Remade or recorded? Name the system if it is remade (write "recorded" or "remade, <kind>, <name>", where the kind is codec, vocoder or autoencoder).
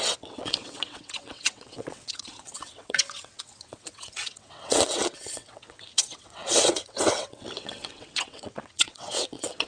remade, vocoder, WaveNeXt